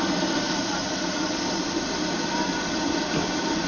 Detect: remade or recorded recorded